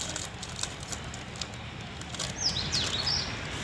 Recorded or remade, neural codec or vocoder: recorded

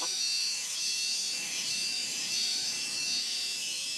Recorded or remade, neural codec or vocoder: remade, autoencoder, DAC-VAE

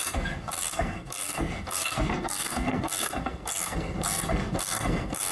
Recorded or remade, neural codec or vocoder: remade, codec, SNAC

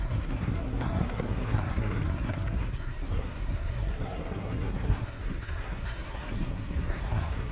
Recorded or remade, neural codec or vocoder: remade, codec, SNAC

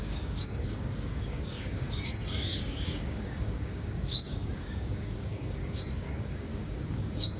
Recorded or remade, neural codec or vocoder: remade, codec, DAC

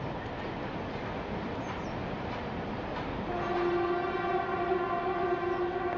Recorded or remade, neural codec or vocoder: recorded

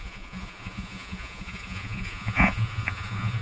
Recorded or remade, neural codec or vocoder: remade, vocoder, Vocos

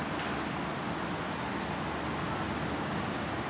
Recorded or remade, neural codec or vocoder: recorded